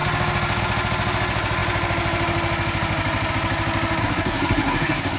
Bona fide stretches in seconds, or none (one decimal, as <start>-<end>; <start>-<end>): 0.0-4.0